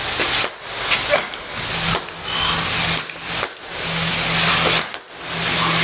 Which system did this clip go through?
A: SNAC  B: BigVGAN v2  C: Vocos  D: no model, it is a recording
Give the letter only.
D